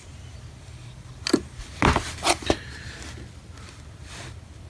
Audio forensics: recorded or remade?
recorded